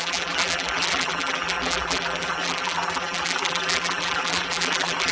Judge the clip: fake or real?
fake